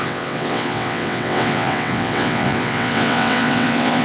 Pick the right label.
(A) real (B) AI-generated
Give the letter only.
B